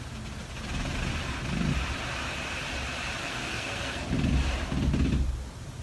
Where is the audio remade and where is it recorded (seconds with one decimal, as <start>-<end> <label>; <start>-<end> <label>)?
0.0-3.2 recorded; 3.2-4.1 remade; 4.1-5.8 recorded